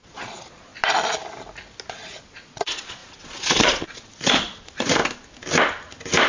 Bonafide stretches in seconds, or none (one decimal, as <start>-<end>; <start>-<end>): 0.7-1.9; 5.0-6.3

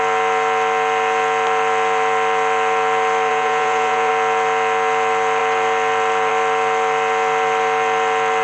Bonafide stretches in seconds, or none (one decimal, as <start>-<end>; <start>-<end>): 0.0-3.3; 4.1-8.4

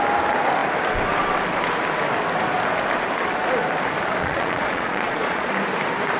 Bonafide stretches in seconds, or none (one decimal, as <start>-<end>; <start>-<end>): 0.0-4.2; 5.5-6.2